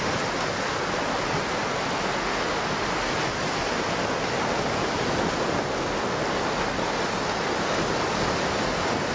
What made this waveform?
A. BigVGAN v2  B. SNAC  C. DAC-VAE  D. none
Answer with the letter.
D